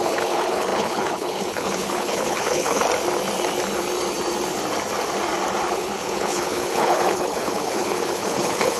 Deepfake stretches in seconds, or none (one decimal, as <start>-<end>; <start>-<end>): 0.0-2.8; 5.7-8.8